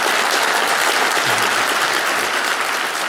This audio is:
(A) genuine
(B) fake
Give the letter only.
A